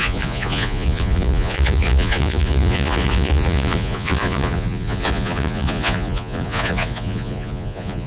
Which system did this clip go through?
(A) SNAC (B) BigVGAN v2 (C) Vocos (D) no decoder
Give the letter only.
C